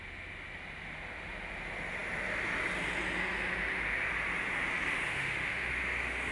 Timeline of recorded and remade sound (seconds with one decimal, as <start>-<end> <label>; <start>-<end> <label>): 0.0-5.1 recorded; 5.1-5.7 remade; 5.7-6.3 recorded